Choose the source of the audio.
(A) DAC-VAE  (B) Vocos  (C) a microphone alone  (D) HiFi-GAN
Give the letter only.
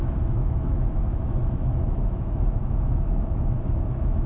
A